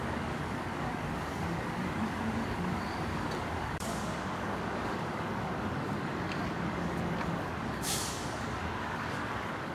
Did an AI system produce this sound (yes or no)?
yes